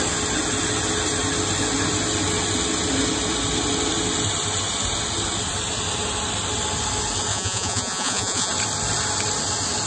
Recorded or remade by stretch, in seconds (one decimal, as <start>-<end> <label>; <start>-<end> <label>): 0.0-7.3 recorded; 7.3-8.5 remade; 8.5-9.9 recorded